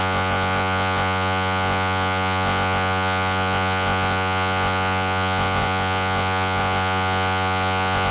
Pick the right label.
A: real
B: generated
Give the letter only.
B